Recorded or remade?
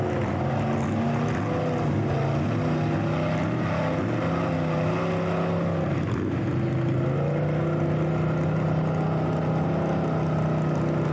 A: recorded